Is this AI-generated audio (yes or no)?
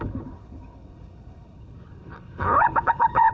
yes